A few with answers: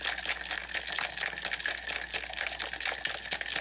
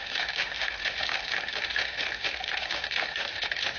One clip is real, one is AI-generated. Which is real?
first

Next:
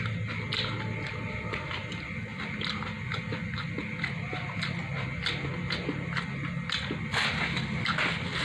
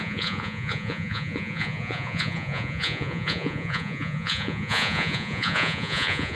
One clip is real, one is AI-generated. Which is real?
first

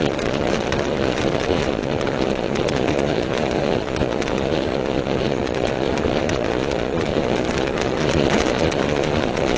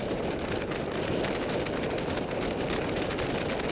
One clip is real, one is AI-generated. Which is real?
second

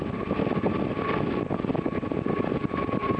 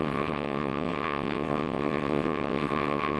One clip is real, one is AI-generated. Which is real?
first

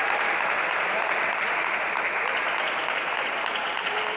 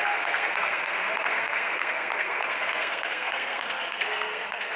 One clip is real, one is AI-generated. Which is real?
first